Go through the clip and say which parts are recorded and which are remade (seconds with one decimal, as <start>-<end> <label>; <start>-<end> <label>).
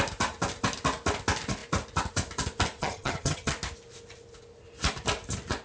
0.0-2.8 recorded; 2.8-3.5 remade; 3.5-5.6 recorded